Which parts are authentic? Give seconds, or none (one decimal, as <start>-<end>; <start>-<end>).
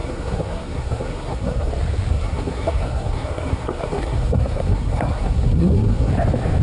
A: 1.7-2.1; 6.1-6.6